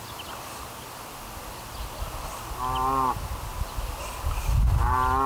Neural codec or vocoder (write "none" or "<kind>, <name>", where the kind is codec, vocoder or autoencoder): none